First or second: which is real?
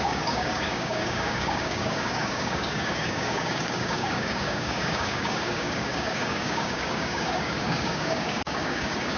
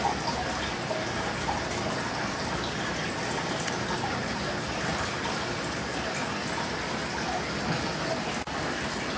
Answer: second